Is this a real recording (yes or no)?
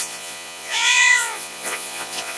no